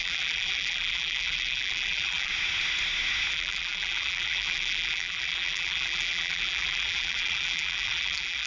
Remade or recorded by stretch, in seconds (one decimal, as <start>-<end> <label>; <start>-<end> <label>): 0.0-2.3 remade; 2.3-3.3 recorded; 3.3-8.5 remade

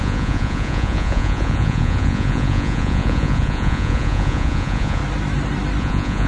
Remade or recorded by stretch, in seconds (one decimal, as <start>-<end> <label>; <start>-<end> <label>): 0.0-5.0 remade; 5.0-5.8 recorded; 5.8-6.3 remade

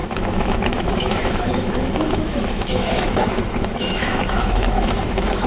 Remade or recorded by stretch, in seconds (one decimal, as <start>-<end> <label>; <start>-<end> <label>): 0.0-5.5 remade

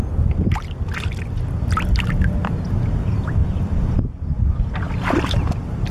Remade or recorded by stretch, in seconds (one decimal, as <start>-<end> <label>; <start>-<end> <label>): 0.0-5.9 recorded

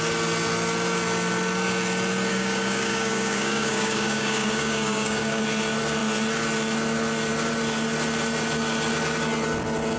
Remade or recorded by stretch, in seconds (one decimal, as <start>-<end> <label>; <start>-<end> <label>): 0.0-2.3 recorded; 2.3-5.4 remade; 5.4-10.0 recorded

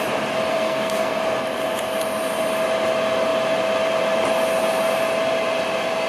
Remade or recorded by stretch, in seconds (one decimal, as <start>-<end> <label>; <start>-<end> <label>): 0.0-0.5 recorded; 0.5-1.2 remade; 1.2-6.1 recorded

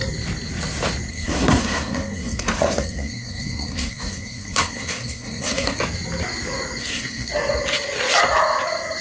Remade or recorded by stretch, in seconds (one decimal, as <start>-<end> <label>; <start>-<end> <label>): 0.0-1.1 recorded; 1.1-5.8 remade; 5.8-6.8 recorded; 6.8-7.3 remade; 7.3-9.0 recorded

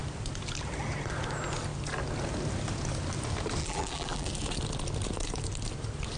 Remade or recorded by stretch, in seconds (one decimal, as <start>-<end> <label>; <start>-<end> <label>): 0.0-3.6 recorded; 3.6-4.3 remade; 4.3-6.2 recorded